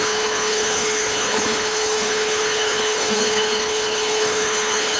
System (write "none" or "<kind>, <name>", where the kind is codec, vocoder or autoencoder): codec, HILCodec